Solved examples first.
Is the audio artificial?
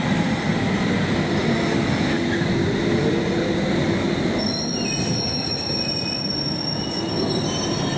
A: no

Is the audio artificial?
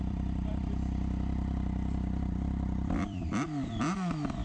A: yes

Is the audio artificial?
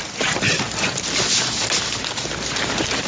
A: no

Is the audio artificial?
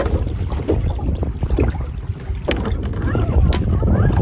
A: no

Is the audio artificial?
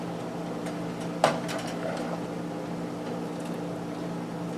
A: no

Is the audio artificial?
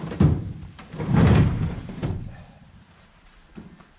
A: yes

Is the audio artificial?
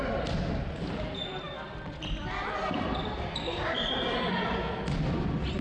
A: no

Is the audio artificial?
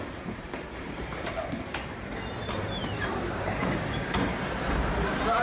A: yes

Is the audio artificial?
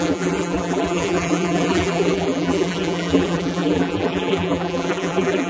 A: yes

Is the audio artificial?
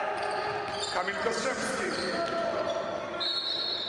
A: no